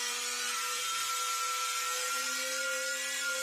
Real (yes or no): no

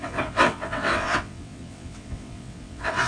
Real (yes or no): no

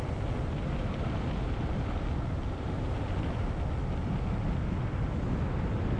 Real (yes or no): yes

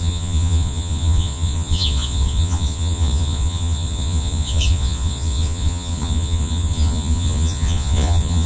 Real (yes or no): no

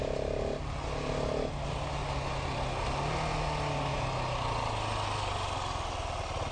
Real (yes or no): yes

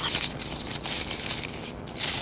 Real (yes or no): yes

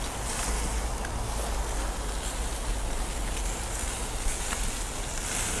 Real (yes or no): yes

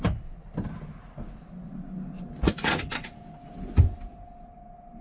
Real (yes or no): yes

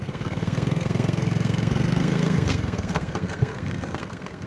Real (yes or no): no